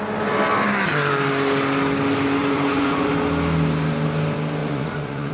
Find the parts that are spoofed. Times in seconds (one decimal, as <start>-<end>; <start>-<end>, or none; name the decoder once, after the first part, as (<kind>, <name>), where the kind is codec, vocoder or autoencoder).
2.4-3.1 (vocoder, Vocos); 4.6-5.3